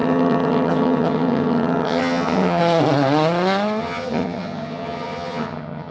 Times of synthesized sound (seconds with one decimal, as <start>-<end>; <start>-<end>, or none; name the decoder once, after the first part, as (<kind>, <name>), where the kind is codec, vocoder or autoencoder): 0.0-2.6 (vocoder, HiFi-GAN); 3.8-5.9